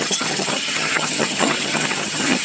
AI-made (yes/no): yes